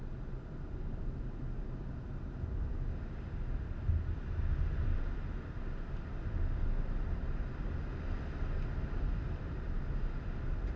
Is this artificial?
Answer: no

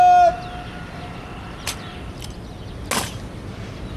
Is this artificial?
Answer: no